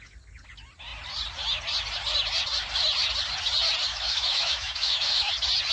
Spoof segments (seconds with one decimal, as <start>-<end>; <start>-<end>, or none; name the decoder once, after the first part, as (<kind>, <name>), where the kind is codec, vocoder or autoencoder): 3.9-5.3 (autoencoder, DAC-VAE)